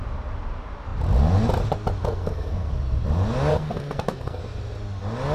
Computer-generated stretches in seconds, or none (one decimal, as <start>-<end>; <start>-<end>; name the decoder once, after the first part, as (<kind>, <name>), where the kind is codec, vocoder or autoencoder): 2.0-2.7 (codec, SNAC); 3.5-4.4